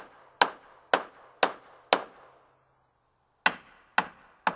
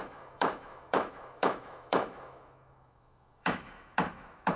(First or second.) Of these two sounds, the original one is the first